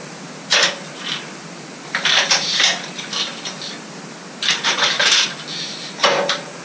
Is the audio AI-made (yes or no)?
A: no